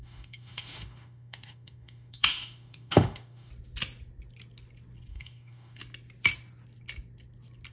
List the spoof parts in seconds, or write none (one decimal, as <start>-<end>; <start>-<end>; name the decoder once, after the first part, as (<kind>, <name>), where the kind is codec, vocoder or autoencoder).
0.0-3.5 (autoencoder, DAC-VAE); 5.1-5.8